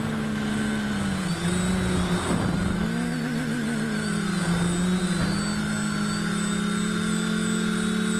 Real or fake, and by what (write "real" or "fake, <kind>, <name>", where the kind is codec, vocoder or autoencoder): real